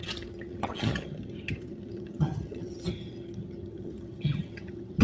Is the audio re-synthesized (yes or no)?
yes